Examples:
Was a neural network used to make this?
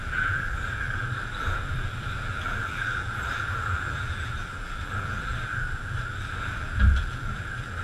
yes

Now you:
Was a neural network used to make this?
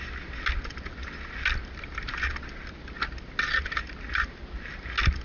no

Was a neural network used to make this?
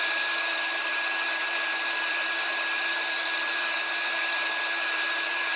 yes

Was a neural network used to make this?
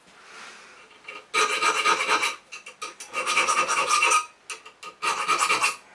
no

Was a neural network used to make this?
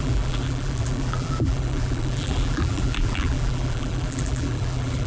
yes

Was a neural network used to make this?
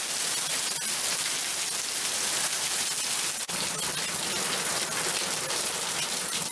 no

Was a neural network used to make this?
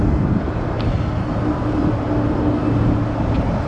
no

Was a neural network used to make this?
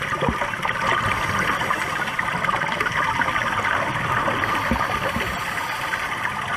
no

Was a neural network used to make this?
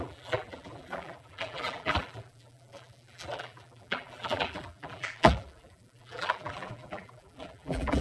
yes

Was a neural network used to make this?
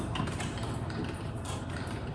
yes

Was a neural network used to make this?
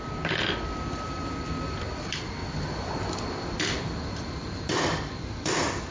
yes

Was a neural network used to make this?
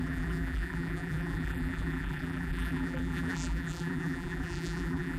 yes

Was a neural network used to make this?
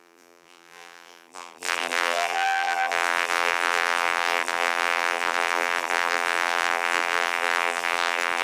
yes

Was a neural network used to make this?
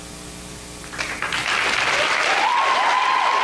no